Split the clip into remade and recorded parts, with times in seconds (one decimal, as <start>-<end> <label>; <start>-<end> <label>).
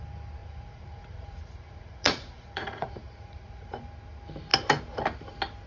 0.0-0.4 recorded; 0.4-3.8 remade; 3.8-5.7 recorded